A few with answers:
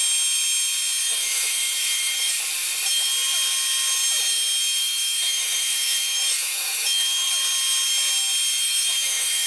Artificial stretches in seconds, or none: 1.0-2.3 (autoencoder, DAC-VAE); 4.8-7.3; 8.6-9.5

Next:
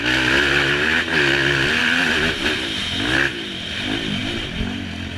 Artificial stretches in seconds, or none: none

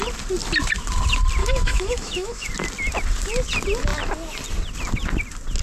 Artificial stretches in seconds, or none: 1.4-2.5 (autoencoder, DAC-VAE)

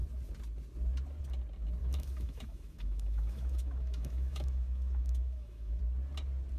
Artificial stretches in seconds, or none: 1.8-5.8 (autoencoder, DAC-VAE)

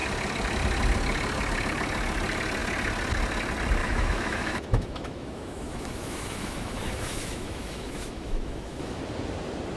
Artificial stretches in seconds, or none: 3.8-9.0 (autoencoder, DAC-VAE)

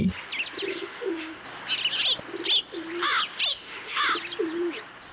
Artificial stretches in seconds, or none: 0.7-1.4 (autoencoder, DAC-VAE); 3.5-4.0